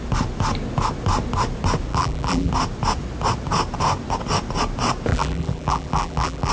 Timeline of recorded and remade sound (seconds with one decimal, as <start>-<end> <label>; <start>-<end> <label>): 0.0-1.9 recorded; 1.9-2.5 remade; 2.5-5.1 recorded; 5.1-6.5 remade